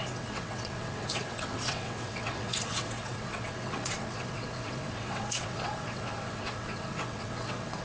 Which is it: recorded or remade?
remade